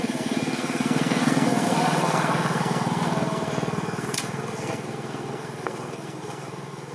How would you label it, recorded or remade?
remade